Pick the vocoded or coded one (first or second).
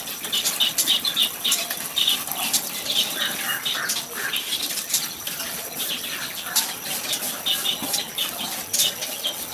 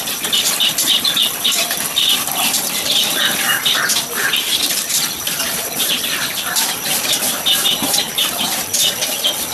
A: second